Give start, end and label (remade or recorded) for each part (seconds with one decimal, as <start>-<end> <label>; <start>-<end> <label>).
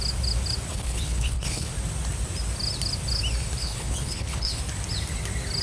0.0-0.7 recorded; 0.7-1.7 remade; 1.7-3.6 recorded; 3.6-4.6 remade; 4.6-5.6 recorded